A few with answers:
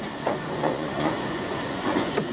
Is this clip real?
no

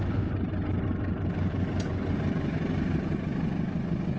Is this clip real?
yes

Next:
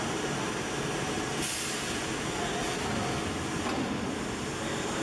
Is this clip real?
yes